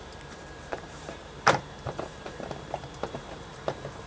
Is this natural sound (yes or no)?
no